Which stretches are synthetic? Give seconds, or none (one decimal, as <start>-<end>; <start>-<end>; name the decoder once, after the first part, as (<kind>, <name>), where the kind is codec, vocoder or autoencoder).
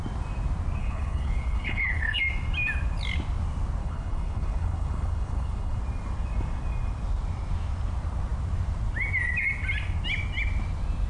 0.8-2.2 (codec, HILCodec); 3.8-5.8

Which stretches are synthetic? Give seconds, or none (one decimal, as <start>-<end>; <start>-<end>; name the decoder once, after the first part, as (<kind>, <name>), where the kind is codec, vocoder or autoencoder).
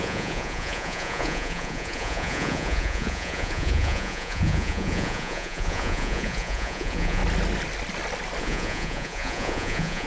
0.0-7.2 (vocoder, Vocos); 8.4-10.1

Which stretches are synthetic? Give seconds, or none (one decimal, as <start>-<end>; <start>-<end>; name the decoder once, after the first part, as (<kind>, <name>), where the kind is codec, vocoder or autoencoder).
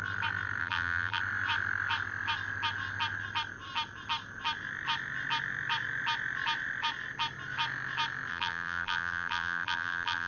0.6-1.2 (vocoder, BigVGAN v2); 8.3-10.3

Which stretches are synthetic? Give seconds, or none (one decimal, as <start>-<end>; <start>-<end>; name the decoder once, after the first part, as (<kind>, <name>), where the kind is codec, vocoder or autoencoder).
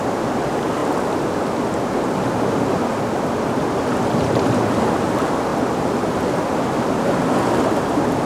none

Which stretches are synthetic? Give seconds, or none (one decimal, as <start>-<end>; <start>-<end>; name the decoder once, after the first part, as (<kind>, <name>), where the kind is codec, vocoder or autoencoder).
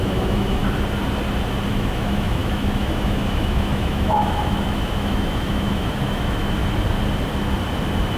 0.0-0.6 (autoencoder, DAC-VAE); 1.7-6.6